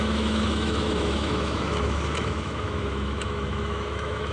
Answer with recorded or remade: remade